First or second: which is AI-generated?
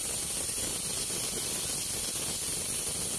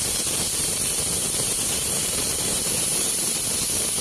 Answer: second